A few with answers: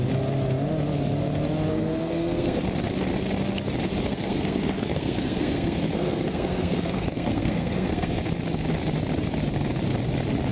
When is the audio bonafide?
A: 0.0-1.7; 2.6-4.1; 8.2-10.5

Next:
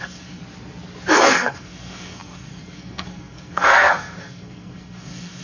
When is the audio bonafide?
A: 0.4-1.1

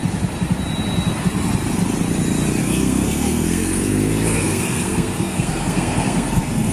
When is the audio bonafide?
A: 0.0-2.6

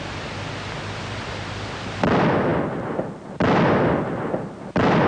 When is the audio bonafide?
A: 0.0-5.1

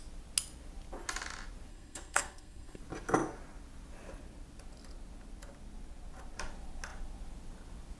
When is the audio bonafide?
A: 0.0-1.7; 2.8-8.0

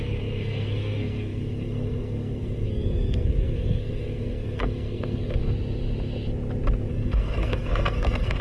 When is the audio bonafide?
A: 5.4-6.9